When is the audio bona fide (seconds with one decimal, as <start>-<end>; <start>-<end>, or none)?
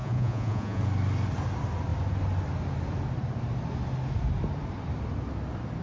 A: 0.8-5.8